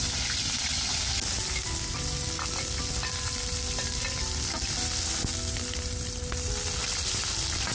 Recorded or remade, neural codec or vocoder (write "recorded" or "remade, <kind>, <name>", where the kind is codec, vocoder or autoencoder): recorded